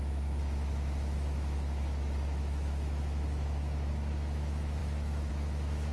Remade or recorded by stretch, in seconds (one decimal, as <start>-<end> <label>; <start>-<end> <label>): 0.0-5.9 remade